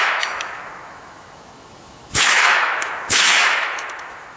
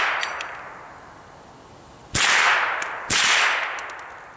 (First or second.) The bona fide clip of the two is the second